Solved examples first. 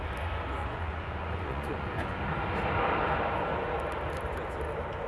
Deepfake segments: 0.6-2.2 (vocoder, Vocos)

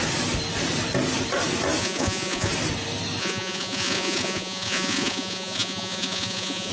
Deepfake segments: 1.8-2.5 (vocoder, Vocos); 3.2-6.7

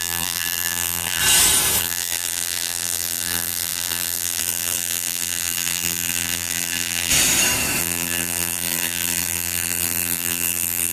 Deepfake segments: 0.0-1.2 (vocoder, BigVGAN v2); 1.8-7.1; 7.8-10.9

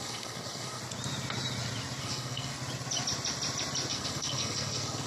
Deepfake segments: 0.0-0.8 (codec, SNAC); 2.0-2.5; 3.9-5.1